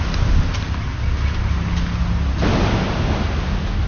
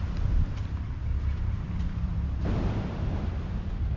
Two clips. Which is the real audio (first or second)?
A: first